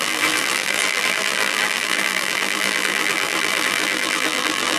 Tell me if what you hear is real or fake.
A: fake